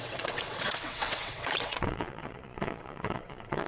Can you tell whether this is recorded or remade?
remade